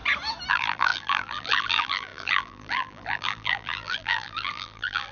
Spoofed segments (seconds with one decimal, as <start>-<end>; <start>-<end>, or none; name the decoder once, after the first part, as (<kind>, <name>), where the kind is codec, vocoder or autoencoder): 0.5-5.1 (vocoder, BigVGAN v2)